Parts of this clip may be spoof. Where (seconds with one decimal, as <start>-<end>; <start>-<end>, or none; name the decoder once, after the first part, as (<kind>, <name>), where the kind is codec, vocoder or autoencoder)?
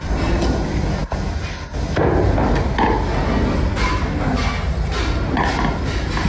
none